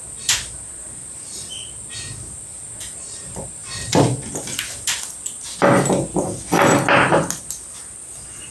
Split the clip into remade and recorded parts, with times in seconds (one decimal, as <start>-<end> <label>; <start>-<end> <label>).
0.0-3.6 remade; 3.6-7.4 recorded; 7.4-8.5 remade